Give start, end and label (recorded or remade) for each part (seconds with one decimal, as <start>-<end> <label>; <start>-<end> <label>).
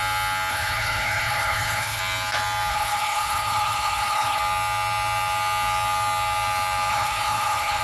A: 0.0-0.5 recorded; 0.5-2.0 remade; 2.0-2.7 recorded; 2.7-4.4 remade; 4.4-6.9 recorded; 6.9-7.8 remade